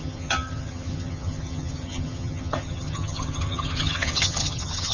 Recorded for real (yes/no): no